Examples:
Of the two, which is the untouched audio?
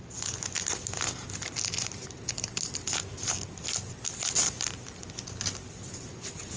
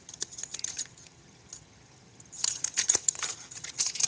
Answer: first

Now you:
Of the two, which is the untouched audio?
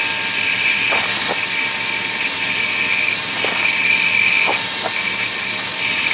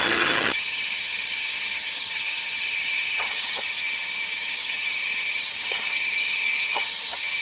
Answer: first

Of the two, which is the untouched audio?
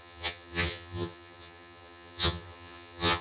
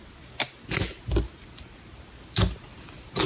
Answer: second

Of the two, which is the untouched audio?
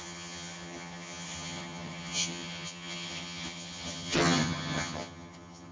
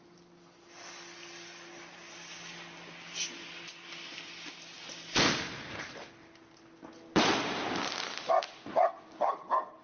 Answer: second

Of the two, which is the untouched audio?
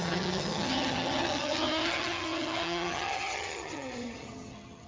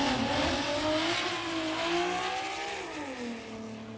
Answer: second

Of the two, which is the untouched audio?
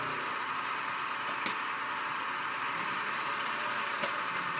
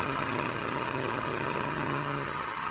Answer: first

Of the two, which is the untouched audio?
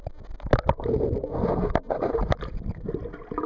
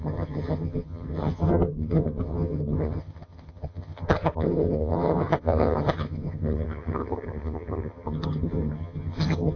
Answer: first